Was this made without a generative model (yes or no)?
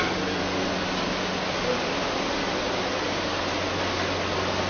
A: yes